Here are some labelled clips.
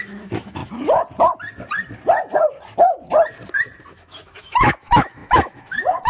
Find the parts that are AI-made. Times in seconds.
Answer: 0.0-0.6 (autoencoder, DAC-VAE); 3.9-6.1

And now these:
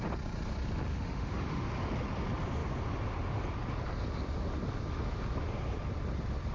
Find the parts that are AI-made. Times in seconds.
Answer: 0.9-1.7 (autoencoder, DAC-VAE)

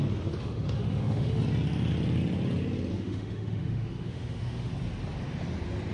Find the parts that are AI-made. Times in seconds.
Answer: 0.4-1.4 (autoencoder, DAC-VAE); 2.9-4.7

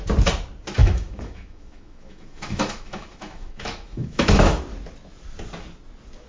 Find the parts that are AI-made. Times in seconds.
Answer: 0.8-4.6 (autoencoder, DAC-VAE)

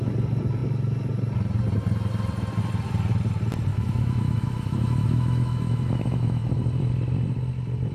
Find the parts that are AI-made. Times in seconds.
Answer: 3.7-6.5 (autoencoder, DAC-VAE)

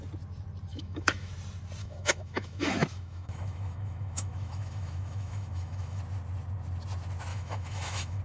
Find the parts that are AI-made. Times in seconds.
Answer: 0.7-1.3 (autoencoder, DAC-VAE); 1.8-6.0; 7.3-8.2

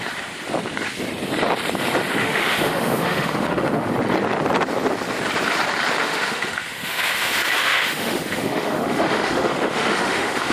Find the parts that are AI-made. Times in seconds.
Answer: 2.2-3.9 (autoencoder, DAC-VAE); 6.0-10.5

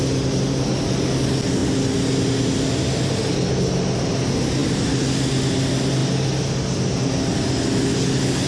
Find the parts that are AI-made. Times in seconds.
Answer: none